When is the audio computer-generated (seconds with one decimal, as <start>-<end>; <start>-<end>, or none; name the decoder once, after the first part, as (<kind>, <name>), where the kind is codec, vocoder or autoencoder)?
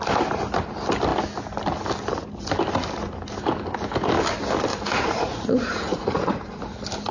4.7-6.6 (vocoder, Vocos)